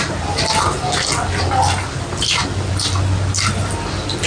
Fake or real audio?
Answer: real